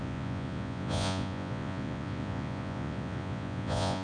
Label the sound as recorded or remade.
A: remade